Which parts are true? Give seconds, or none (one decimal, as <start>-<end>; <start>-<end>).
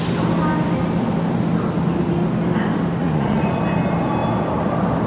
0.0-3.0; 3.6-5.1